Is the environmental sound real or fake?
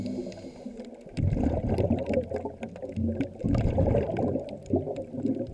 real